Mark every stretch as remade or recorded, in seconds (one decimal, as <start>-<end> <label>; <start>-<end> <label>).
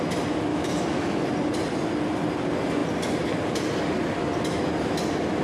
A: 0.0-0.5 recorded; 0.5-1.3 remade; 1.3-5.4 recorded